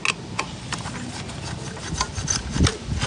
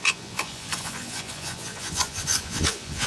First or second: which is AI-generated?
second